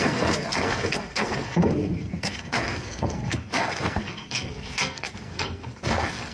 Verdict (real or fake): fake